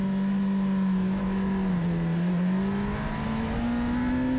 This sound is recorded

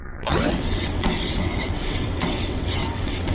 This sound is remade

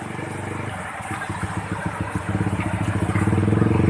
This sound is recorded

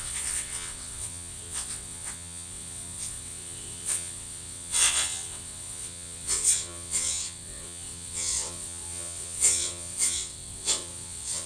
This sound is remade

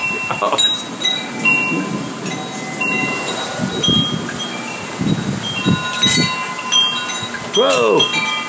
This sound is recorded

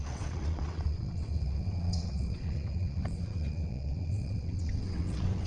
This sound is remade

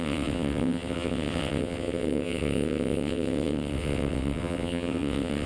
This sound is remade